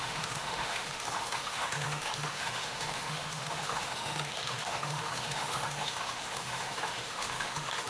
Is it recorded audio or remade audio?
remade